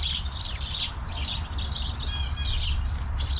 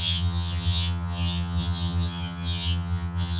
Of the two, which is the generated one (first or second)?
second